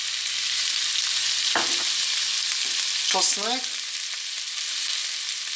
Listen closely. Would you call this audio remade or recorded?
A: recorded